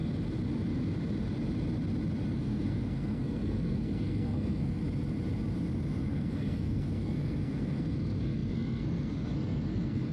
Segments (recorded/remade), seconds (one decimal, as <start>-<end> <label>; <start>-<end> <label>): 0.0-2.3 recorded; 2.3-4.8 remade; 4.8-6.0 recorded; 6.0-10.1 remade